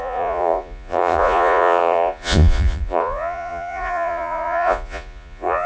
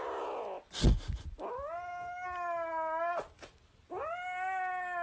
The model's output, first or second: first